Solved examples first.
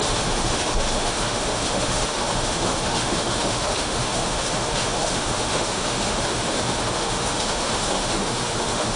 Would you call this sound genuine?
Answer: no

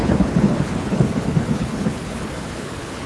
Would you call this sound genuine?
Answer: no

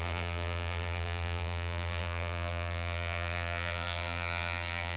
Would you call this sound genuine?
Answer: no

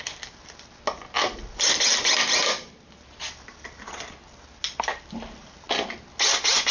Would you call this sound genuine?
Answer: yes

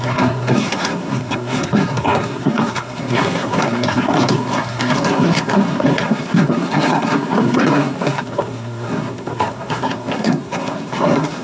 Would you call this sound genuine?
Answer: no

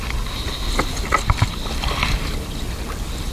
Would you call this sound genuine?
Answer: yes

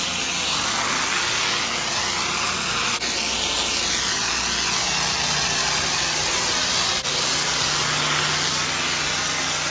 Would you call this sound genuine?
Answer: yes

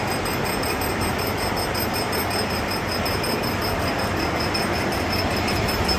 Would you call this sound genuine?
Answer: yes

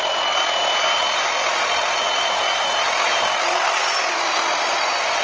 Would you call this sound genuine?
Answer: yes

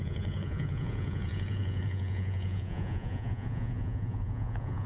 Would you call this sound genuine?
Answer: no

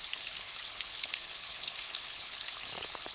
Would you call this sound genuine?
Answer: no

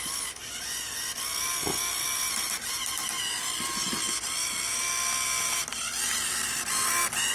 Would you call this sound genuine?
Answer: yes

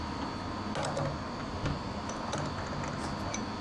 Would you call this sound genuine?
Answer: yes